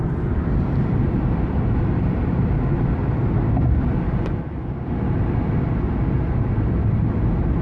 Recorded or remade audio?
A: recorded